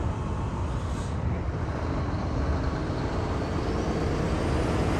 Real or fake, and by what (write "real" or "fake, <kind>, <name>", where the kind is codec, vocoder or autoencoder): real